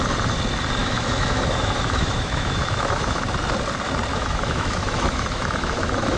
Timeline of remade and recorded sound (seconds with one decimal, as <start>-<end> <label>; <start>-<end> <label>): 0.0-0.8 recorded; 0.8-3.2 remade; 3.2-4.1 recorded; 4.1-6.2 remade